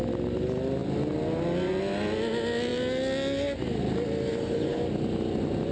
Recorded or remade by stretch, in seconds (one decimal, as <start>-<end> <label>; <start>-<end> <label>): 0.0-4.3 recorded; 4.3-4.8 remade; 4.8-5.7 recorded